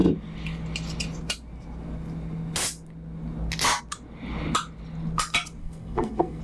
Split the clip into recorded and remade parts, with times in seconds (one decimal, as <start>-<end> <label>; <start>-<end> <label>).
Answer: 0.0-5.6 recorded; 5.6-6.4 remade